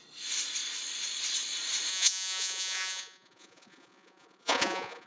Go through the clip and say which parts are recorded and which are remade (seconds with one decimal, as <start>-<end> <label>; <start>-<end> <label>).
0.0-1.9 recorded; 1.9-5.1 remade